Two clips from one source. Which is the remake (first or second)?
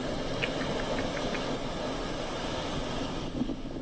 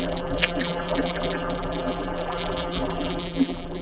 second